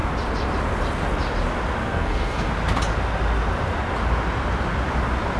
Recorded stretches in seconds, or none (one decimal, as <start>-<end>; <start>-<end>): 0.0-1.8; 2.5-5.4